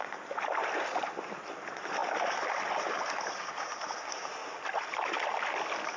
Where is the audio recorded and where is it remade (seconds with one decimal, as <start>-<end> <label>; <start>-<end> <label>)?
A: 0.0-6.0 recorded